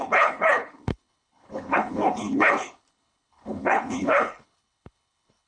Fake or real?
fake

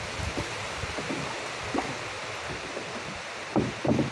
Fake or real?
real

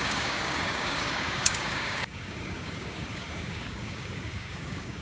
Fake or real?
fake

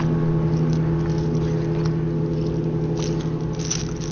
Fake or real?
real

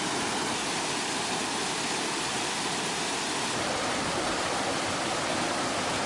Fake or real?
real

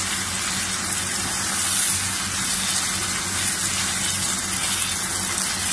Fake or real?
real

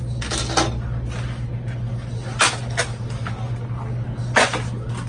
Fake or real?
real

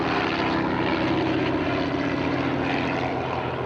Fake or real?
real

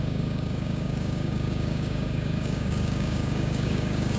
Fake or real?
fake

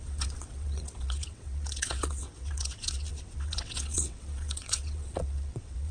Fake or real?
fake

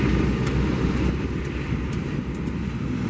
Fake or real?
real